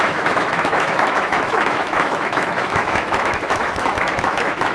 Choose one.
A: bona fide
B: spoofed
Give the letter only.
B